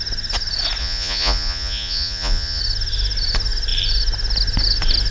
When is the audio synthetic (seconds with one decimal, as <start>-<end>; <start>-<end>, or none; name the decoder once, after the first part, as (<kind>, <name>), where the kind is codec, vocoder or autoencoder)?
0.8-2.6 (vocoder, Vocos)